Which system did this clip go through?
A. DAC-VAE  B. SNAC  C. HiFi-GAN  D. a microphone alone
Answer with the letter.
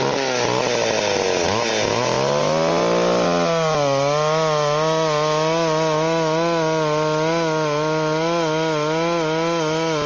D